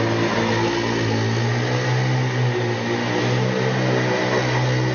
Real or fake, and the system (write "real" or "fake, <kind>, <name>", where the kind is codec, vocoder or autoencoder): real